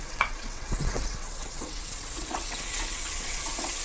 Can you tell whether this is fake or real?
fake